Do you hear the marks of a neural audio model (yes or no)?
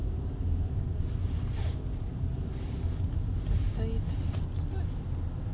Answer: no